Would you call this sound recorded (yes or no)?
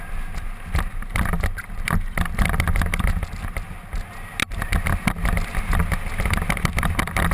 yes